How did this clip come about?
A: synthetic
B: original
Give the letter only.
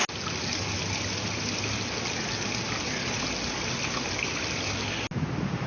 B